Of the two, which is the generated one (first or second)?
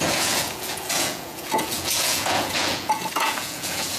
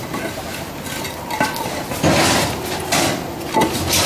first